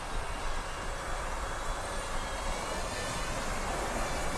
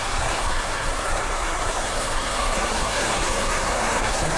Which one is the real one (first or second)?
first